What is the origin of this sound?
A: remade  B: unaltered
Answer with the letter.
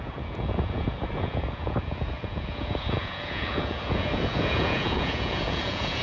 A